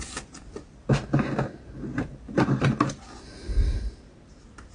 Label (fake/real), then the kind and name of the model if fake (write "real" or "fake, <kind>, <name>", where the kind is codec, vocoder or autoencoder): real